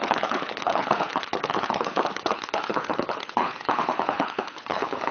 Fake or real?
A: fake